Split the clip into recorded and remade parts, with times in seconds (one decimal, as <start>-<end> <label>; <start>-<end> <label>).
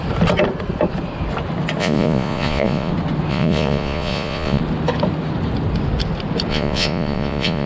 0.0-1.8 recorded; 1.8-2.9 remade; 2.9-3.3 recorded; 3.3-4.6 remade; 4.6-6.5 recorded; 6.5-7.7 remade